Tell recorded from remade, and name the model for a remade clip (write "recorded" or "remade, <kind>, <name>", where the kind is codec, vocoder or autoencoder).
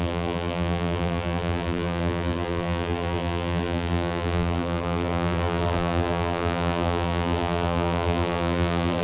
remade, vocoder, BigVGAN v2